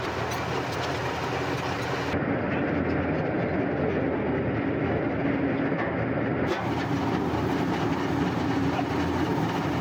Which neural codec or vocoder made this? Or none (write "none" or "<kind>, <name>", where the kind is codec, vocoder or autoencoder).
none